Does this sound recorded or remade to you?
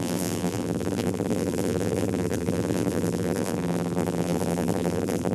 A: remade